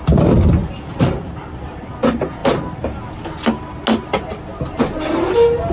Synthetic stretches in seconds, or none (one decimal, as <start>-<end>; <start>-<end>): 0.6-1.4